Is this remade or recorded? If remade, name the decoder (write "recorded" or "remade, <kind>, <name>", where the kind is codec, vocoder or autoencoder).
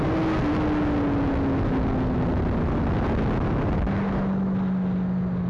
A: recorded